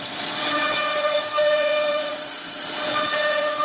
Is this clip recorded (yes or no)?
no